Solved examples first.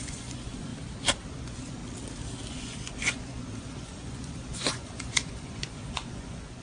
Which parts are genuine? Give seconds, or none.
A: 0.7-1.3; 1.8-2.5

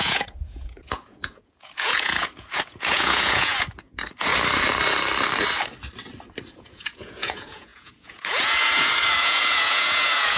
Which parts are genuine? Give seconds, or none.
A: 4.3-6.5